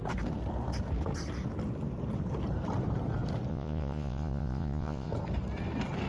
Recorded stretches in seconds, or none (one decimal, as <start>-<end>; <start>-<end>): 0.0-3.5; 5.1-6.1